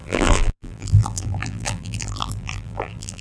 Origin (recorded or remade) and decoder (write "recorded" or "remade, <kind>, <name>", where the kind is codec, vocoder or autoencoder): remade, vocoder, BigVGAN v2